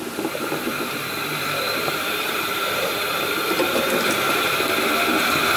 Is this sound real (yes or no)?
no